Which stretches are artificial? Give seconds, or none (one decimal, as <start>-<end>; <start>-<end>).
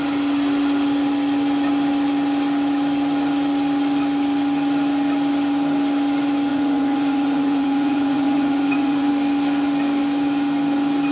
6.5-9.1